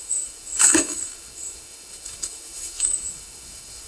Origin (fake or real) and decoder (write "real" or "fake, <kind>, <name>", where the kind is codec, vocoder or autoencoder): fake, autoencoder, DAC-VAE